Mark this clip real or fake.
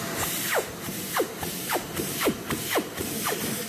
fake